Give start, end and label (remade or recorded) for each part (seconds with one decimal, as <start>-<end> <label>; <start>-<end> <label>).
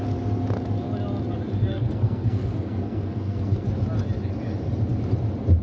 0.0-1.7 recorded; 1.7-3.7 remade; 3.7-5.6 recorded